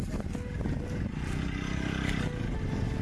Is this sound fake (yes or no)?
no